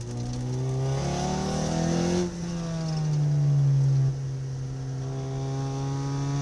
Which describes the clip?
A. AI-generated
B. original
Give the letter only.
B